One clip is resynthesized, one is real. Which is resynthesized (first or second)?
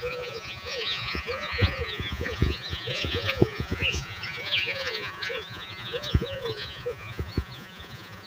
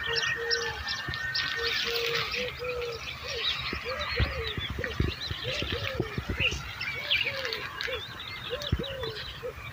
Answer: first